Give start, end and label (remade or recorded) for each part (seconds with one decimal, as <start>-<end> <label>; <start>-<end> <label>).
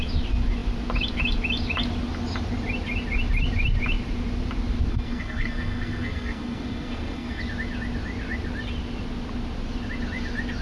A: 0.0-4.9 recorded; 4.9-7.4 remade; 7.4-10.6 recorded